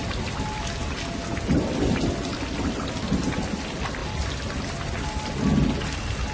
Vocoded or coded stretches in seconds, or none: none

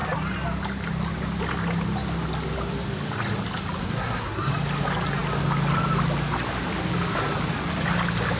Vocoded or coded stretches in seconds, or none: 3.8-4.5

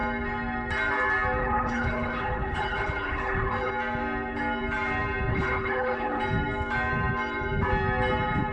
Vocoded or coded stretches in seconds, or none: 1.4-3.7; 5.3-6.2

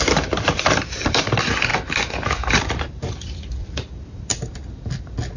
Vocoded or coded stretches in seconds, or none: 0.0-1.7; 2.5-5.4

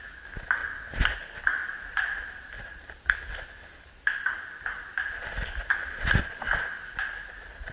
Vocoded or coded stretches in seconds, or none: 1.6-4.9

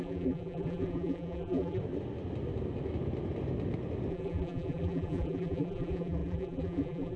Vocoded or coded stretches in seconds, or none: 0.0-1.8; 4.1-7.2

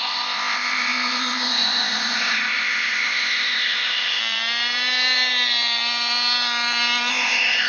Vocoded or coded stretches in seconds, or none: 0.0-4.2; 7.1-7.7

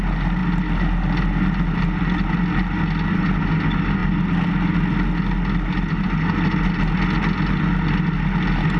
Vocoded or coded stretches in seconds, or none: none